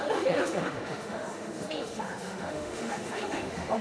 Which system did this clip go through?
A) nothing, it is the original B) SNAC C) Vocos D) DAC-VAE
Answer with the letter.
D